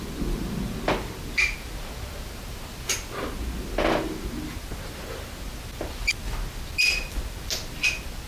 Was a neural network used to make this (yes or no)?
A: no